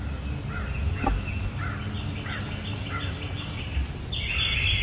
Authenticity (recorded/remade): recorded